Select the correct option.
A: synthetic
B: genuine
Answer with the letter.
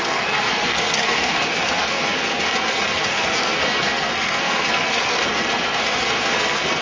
A